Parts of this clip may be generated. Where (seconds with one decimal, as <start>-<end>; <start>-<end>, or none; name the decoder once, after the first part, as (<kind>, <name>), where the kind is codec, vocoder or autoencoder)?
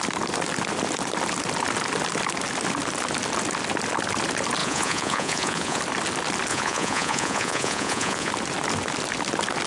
4.6-5.8 (vocoder, Vocos); 6.5-8.3